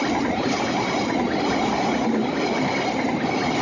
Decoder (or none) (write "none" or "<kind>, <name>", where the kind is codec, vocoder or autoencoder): none